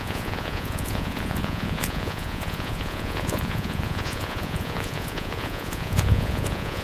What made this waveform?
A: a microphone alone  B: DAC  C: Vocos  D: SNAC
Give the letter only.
C